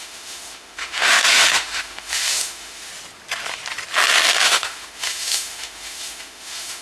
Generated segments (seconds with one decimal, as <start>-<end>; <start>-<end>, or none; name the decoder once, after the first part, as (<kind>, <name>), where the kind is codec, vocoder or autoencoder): 0.0-2.9 (autoencoder, DAC-VAE); 4.3-6.8